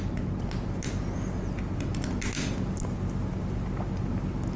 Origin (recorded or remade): recorded